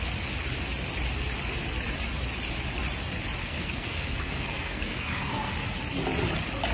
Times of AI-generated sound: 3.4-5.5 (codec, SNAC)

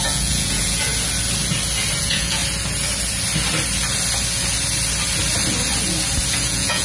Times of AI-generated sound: 0.0-0.9 (vocoder, Vocos); 2.0-2.4; 6.3-6.8

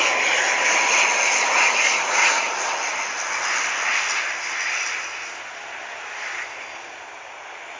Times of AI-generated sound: 1.7-2.4 (vocoder, Vocos)